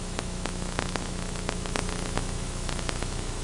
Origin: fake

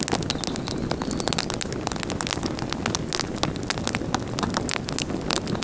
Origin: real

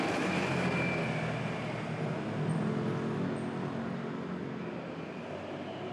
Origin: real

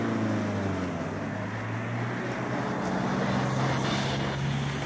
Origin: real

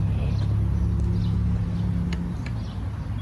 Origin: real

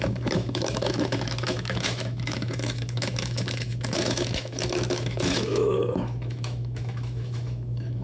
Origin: fake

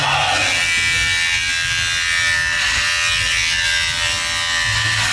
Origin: real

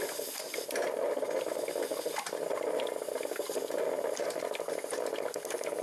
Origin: real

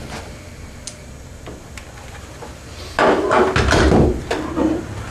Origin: real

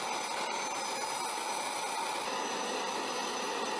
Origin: real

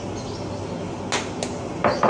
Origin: real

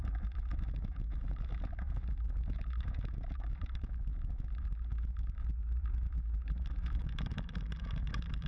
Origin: fake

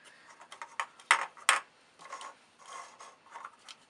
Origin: real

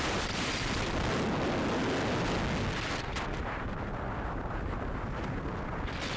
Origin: real